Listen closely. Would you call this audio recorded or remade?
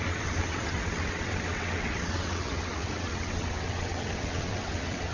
remade